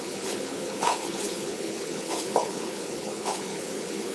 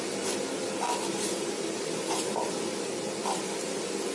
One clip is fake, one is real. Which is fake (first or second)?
first